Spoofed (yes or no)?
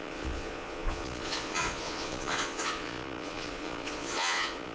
yes